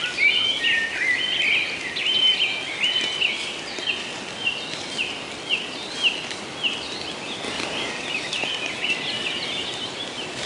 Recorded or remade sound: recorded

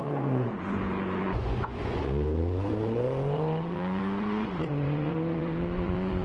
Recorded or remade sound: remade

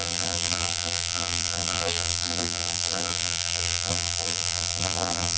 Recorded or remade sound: remade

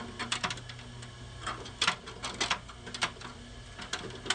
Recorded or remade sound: recorded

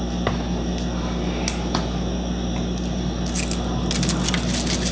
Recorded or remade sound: recorded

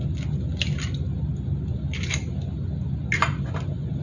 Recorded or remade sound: recorded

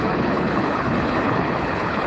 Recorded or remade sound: remade